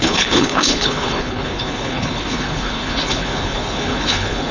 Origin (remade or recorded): remade